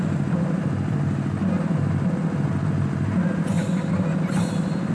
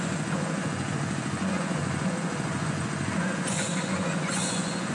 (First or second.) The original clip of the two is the first